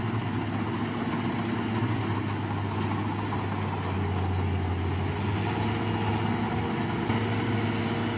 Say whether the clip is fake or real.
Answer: real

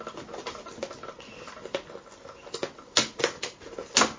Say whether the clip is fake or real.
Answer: real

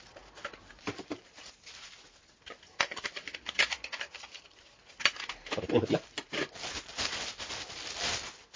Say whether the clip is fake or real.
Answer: real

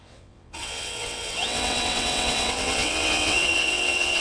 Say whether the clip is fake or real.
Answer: fake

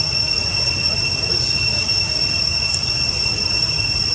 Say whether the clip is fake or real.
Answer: real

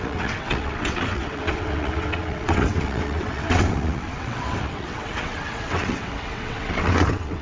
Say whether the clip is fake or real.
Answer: fake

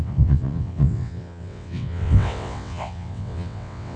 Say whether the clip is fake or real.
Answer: fake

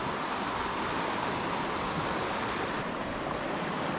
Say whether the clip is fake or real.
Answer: real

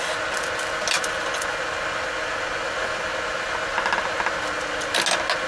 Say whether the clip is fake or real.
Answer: real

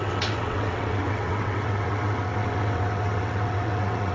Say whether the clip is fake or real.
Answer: fake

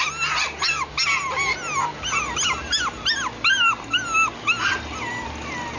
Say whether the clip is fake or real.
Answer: real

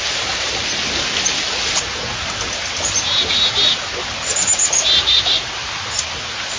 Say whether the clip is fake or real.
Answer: real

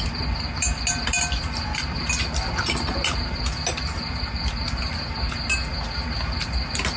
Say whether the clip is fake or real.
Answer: real